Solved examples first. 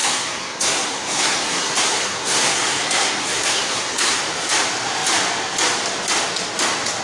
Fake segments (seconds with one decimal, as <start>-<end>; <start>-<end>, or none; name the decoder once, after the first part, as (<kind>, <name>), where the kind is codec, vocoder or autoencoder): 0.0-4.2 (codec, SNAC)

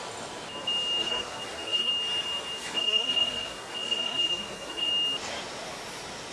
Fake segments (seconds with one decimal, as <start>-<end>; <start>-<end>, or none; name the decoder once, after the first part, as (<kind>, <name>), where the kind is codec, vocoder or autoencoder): 1.0-1.9 (codec, SNAC); 2.6-4.9

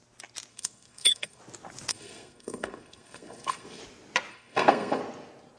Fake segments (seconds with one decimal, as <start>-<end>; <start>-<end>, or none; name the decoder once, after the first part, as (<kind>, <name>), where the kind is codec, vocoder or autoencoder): 0.5-1.4 (codec, SNAC); 1.9-3.8; 4.3-5.0

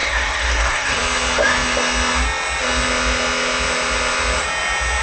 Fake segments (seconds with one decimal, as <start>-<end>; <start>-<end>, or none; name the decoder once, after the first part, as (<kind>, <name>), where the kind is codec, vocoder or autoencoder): 0.0-1.0 (codec, SNAC)

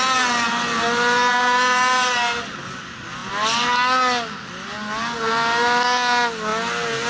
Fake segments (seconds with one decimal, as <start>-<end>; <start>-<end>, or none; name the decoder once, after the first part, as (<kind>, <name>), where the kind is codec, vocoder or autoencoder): none